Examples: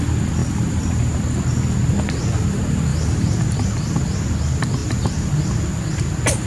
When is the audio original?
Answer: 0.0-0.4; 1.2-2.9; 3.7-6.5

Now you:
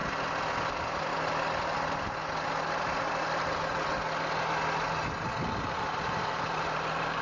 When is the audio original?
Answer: 0.0-0.7; 1.1-5.4

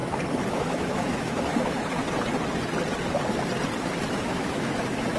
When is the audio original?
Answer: 0.0-0.5; 2.0-4.1

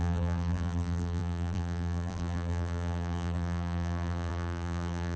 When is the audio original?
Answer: none

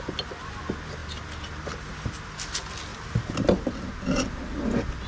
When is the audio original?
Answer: 0.0-2.9; 3.9-5.1